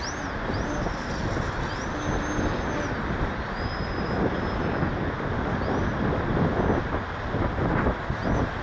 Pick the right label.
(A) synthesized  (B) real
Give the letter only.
B